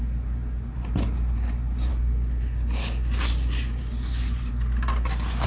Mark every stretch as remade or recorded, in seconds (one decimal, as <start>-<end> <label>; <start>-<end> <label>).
0.0-5.5 recorded

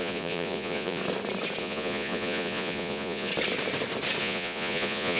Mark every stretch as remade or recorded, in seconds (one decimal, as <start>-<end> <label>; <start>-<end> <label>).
0.0-1.0 remade; 1.0-1.6 recorded; 1.6-3.3 remade; 3.3-4.2 recorded; 4.2-5.2 remade

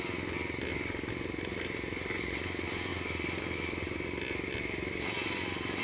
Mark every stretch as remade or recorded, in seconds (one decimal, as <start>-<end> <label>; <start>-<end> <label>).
0.0-5.8 recorded

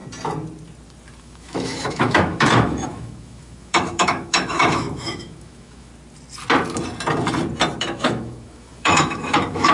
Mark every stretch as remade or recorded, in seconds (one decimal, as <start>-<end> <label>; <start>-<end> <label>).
0.0-1.2 recorded; 1.2-5.9 remade; 5.9-7.8 recorded; 7.8-9.7 remade

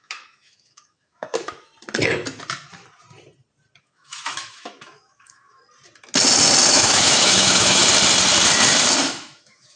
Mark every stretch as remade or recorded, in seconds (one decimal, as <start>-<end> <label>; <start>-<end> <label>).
0.0-1.7 remade; 1.7-3.8 recorded; 3.8-5.6 remade; 5.6-6.7 recorded; 6.7-7.8 remade; 7.8-9.1 recorded; 9.1-9.8 remade